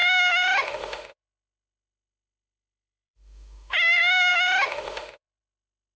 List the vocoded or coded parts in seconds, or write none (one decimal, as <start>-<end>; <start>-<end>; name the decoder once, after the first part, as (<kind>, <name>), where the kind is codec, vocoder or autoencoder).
0.0-6.0 (autoencoder, DAC-VAE)